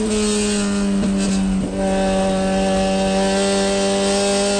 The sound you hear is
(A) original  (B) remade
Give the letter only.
A